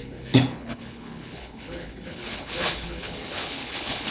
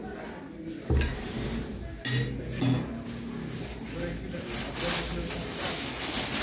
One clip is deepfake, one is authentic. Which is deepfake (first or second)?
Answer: first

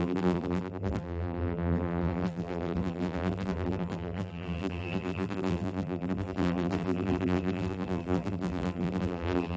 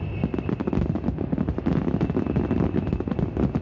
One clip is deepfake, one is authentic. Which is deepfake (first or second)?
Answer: first